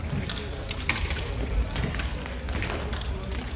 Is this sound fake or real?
real